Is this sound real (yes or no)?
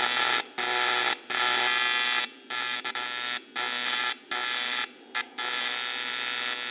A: yes